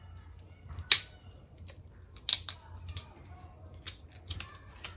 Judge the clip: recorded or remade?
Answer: recorded